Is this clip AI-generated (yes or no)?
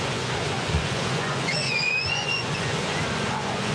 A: yes